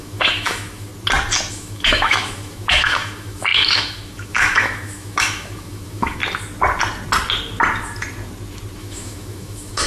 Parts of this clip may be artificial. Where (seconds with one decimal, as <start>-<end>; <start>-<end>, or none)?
0.0-0.9; 1.5-6.2; 8.8-9.9